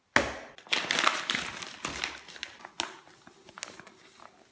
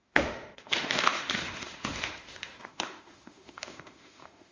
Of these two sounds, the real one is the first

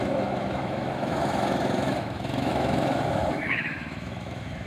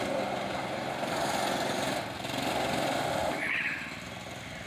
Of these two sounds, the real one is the second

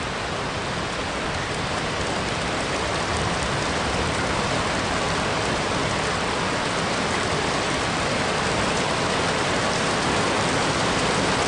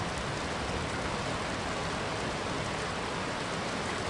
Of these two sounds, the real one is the second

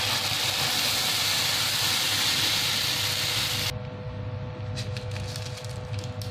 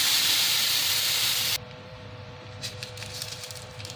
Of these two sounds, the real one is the first